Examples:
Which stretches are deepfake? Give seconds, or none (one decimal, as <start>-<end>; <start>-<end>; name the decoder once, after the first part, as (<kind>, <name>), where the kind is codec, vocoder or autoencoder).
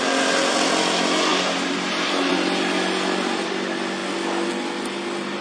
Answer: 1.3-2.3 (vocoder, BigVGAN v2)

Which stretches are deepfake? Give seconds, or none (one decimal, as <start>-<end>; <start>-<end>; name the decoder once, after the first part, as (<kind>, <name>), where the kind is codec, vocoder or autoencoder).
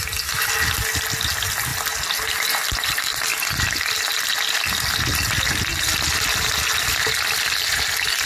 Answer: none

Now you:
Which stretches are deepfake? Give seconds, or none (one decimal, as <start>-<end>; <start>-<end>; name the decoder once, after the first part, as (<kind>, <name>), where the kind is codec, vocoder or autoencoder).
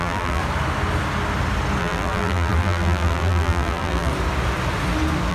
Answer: 0.0-0.4 (vocoder, BigVGAN v2); 1.8-4.1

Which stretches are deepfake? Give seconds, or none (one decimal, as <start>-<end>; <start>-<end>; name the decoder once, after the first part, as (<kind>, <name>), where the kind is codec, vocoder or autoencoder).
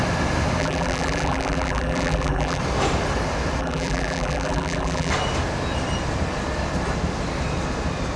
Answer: 0.6-2.6 (vocoder, BigVGAN v2); 3.6-5.1